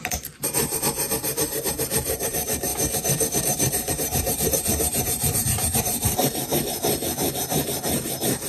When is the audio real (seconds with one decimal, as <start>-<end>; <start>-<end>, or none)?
2.7-3.6; 6.5-8.1